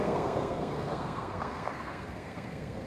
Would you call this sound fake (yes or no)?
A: yes